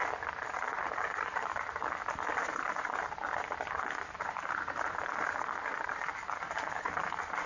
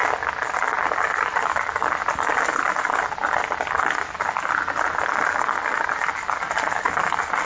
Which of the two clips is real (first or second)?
second